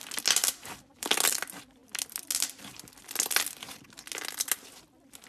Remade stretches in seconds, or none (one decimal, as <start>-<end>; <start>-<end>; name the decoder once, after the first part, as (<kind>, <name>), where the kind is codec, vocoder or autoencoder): 0.4-1.2 (vocoder, BigVGAN v2)